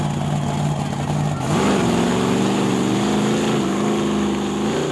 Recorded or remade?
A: recorded